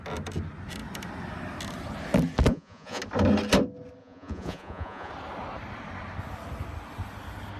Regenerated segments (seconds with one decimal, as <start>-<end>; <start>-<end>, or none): 2.5-3.0; 4.0-5.1